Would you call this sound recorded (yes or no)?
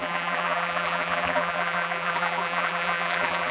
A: no